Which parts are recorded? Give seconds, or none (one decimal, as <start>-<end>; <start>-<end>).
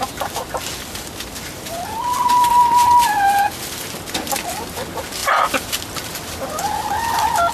0.0-7.5